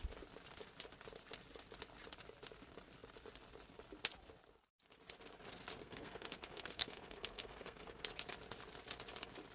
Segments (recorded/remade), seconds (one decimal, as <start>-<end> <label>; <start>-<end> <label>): 0.0-5.8 recorded; 5.8-8.0 remade; 8.0-9.5 recorded